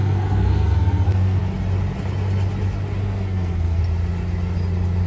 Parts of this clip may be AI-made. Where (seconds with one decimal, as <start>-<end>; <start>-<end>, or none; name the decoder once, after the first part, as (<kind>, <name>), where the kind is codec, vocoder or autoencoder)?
0.0-1.4 (codec, SNAC); 3.0-3.8